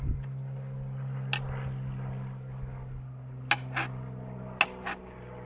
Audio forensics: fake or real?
real